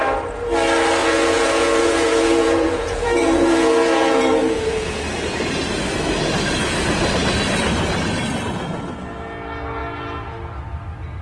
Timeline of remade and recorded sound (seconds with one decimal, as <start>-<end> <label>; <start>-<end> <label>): 0.0-1.0 recorded; 1.0-5.0 remade; 5.0-11.2 recorded